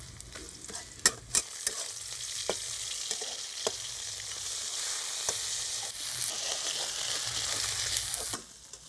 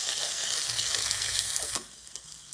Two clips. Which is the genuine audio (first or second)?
first